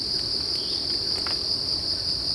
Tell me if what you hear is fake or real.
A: real